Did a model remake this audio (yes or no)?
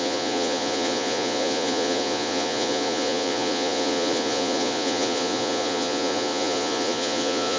yes